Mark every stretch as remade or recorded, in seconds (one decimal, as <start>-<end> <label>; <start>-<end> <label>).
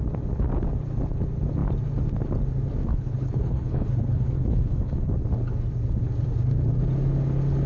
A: 0.0-2.9 recorded; 2.9-5.1 remade; 5.1-7.7 recorded